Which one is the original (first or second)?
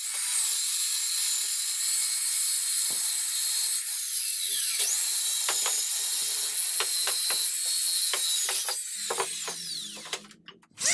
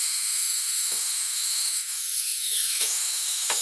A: first